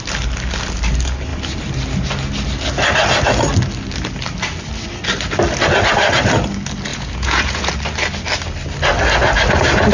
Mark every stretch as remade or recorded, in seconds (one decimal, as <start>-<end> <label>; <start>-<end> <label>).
0.0-6.9 recorded; 6.9-7.7 remade; 7.7-9.9 recorded